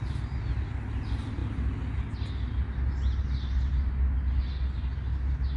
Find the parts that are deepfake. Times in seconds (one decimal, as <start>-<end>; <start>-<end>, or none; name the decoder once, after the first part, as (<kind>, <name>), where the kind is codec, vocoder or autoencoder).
none